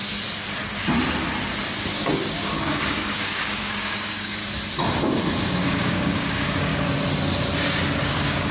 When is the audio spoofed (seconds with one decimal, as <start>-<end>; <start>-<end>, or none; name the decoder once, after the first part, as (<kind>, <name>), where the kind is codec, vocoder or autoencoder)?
1.9-4.4 (codec, DAC); 5.3-6.7; 8.0-8.5